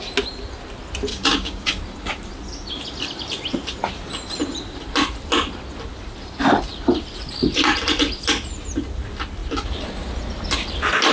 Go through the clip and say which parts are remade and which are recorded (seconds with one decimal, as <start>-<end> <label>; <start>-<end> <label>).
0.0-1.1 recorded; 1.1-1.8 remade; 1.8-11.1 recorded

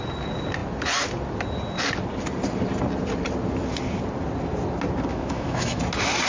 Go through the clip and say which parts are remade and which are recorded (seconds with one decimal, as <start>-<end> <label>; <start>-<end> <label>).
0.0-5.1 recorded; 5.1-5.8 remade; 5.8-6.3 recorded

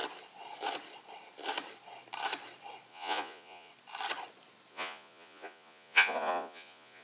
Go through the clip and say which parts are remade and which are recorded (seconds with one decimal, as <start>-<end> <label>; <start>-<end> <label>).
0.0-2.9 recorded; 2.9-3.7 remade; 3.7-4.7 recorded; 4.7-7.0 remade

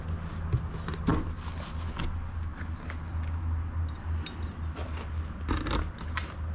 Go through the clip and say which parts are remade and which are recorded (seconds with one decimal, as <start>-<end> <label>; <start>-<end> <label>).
0.0-6.5 recorded